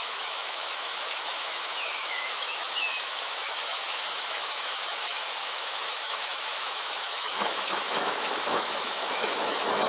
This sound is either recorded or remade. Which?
remade